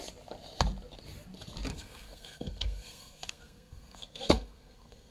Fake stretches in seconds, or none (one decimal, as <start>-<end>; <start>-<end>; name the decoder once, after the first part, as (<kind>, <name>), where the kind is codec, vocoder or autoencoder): 1.7-5.1 (codec, SNAC)